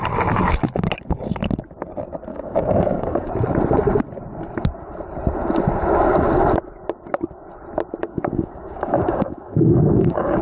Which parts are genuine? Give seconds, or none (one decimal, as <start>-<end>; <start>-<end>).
0.0-2.3; 3.3-8.0